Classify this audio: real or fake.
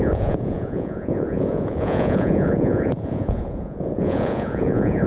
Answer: fake